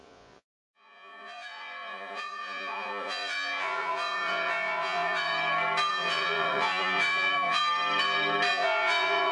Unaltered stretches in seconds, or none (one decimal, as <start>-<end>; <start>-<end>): 5.3-5.9; 7.6-8.5